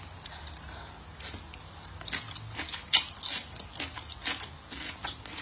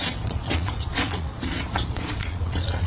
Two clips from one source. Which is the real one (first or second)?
first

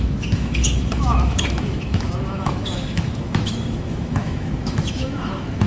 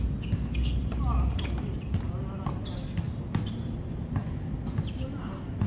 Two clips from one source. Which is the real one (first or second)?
second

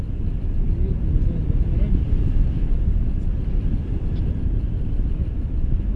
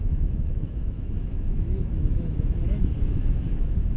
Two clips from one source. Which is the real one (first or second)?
first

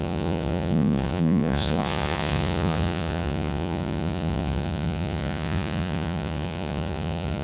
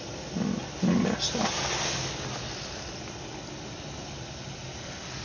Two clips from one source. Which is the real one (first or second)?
second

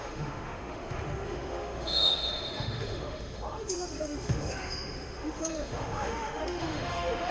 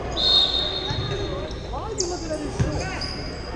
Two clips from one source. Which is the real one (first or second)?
second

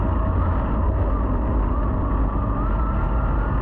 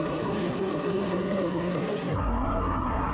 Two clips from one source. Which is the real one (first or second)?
first